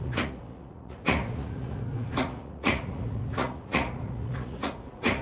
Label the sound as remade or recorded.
remade